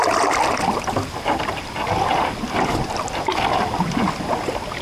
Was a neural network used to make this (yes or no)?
no